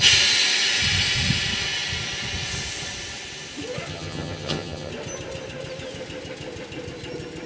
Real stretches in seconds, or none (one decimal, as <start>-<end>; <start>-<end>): 0.0-3.9; 4.9-7.5